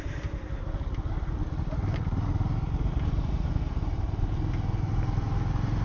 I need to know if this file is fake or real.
real